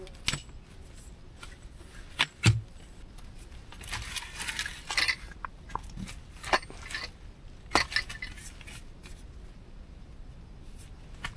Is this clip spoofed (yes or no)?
no